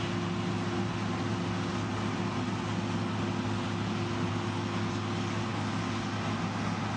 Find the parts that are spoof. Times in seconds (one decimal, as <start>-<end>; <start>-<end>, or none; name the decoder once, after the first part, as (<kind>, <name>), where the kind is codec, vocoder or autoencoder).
none